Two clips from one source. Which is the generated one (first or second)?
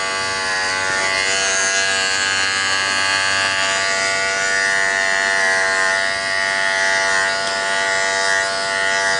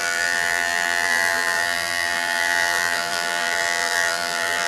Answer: second